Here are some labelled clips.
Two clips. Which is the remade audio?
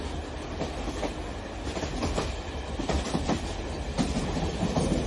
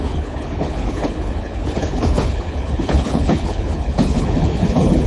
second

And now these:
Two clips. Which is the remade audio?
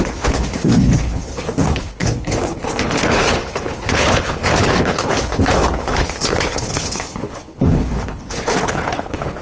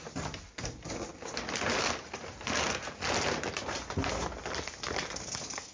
first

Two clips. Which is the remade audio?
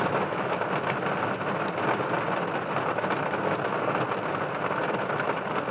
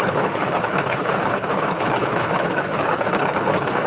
second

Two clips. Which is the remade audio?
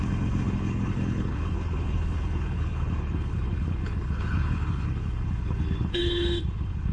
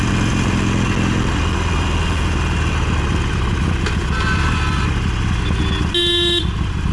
first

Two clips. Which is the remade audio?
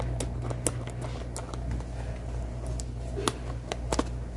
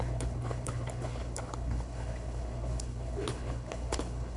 second